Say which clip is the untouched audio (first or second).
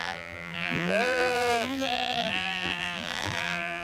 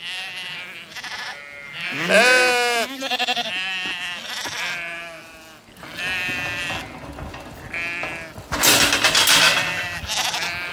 second